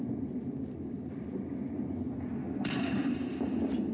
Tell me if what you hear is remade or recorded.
remade